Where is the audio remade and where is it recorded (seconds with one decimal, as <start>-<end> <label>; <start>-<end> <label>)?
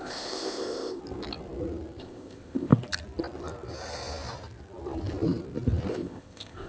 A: 0.0-1.0 remade; 1.0-2.0 recorded; 2.0-2.7 remade; 2.7-5.9 recorded; 5.9-6.7 remade